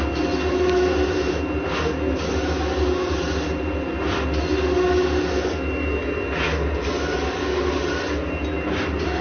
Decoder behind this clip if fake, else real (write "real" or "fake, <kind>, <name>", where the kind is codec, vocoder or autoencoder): real